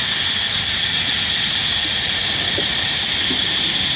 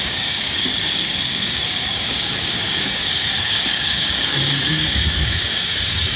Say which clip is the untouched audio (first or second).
first